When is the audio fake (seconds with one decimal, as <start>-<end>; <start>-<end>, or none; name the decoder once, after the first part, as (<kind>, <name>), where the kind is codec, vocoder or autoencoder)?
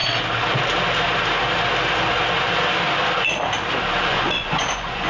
4.1-5.1 (vocoder, Vocos)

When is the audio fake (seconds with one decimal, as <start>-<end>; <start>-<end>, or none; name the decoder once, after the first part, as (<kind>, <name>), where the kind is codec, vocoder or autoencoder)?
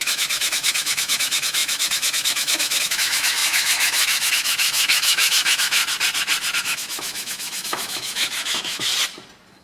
0.0-5.8 (autoencoder, DAC-VAE); 6.6-8.9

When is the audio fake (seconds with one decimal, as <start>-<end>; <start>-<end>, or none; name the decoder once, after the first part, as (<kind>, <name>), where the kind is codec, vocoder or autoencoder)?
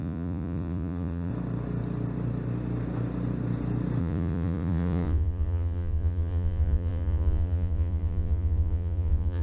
0.0-1.3 (vocoder, Vocos); 4.0-9.4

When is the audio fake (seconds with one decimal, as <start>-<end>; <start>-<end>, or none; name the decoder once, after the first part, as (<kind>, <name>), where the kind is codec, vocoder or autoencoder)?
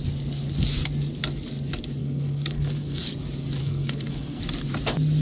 2.0-3.0 (codec, SNAC); 3.6-4.4